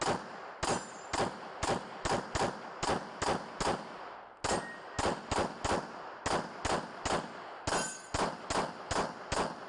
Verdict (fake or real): real